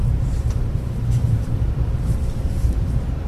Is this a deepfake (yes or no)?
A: yes